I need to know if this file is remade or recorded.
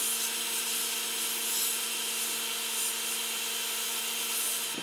recorded